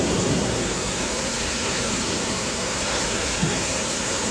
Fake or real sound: fake